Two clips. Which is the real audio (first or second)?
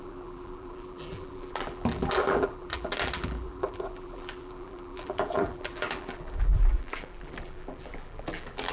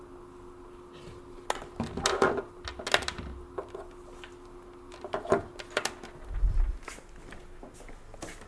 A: second